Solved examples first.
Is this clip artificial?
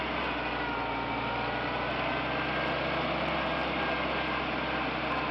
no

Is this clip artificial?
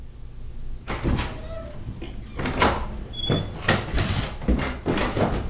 no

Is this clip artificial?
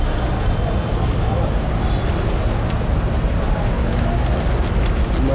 no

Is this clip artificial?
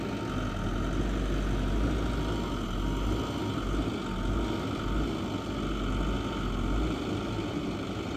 no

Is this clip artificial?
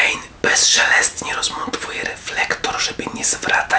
no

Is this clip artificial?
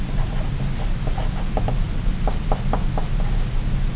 no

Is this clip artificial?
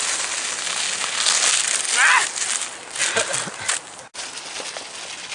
no